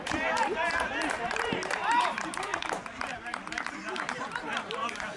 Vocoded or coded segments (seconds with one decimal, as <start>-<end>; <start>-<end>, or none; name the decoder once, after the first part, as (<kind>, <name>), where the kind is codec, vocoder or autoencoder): 0.0-0.6 (vocoder, BigVGAN v2); 1.3-2.5; 3.1-5.2

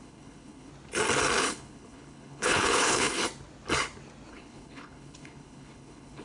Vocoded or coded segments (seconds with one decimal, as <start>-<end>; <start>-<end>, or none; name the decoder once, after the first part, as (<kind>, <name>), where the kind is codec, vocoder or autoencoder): 0.0-0.7 (codec, HILCodec); 1.4-3.2; 4.3-6.2

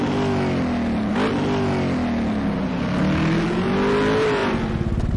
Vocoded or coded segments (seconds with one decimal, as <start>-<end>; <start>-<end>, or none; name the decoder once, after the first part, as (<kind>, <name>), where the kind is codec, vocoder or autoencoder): none

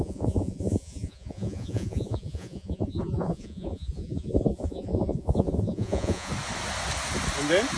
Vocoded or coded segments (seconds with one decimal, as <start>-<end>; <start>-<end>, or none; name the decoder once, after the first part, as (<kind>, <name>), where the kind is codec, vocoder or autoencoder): 0.0-6.3 (vocoder, Vocos)

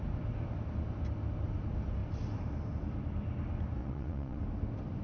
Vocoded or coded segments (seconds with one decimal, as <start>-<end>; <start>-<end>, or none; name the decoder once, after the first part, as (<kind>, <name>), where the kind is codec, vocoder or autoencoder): 3.8-4.4 (vocoder, Vocos)

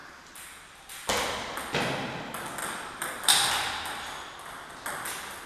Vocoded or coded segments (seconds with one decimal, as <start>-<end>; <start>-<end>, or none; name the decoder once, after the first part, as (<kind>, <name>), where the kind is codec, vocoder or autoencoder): 2.6-3.5 (vocoder, BigVGAN v2)